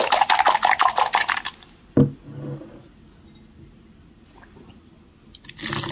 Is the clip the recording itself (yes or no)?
yes